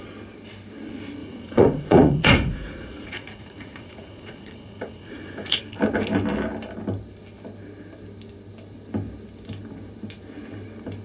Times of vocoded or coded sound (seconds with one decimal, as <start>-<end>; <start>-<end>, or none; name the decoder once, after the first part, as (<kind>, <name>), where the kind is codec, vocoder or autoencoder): 1.2-5.6 (vocoder, Vocos)